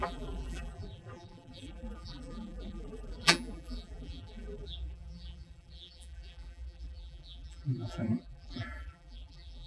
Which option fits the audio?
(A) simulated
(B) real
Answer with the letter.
A